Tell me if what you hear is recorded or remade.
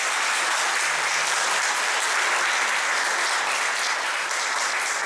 recorded